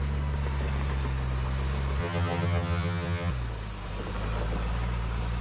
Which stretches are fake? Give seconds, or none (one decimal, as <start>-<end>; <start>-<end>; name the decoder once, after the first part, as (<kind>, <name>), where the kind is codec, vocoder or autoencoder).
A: 2.0-3.3 (vocoder, HiFi-GAN)